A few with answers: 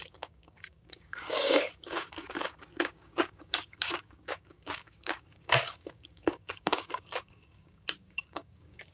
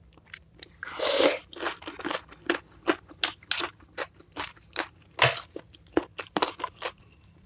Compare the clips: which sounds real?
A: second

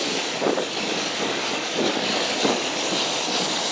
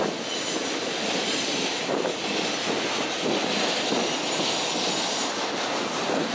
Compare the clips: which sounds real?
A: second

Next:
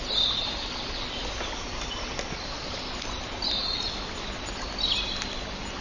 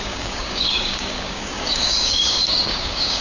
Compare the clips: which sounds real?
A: first